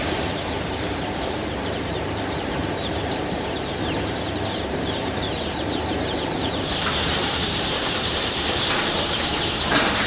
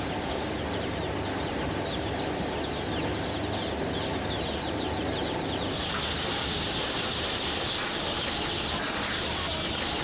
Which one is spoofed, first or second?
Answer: first